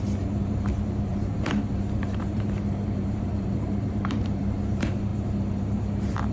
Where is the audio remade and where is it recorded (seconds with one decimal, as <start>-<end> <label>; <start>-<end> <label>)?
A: 0.0-6.3 remade